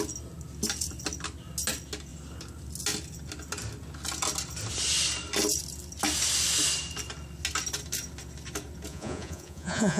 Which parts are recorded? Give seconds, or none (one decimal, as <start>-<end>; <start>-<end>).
0.0-8.9